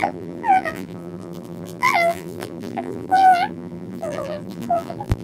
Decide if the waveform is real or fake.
fake